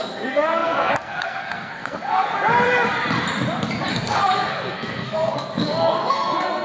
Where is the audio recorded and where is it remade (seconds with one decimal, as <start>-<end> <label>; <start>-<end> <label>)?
0.0-2.3 remade; 2.3-3.9 recorded; 3.9-6.6 remade